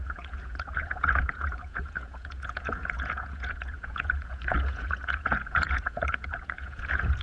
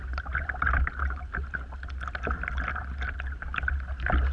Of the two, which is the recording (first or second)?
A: second